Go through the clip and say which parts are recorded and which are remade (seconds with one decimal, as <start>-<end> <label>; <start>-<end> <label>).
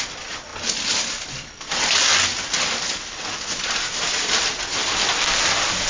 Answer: 0.0-5.9 recorded